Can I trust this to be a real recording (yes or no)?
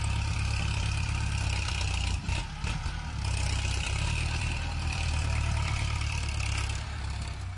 no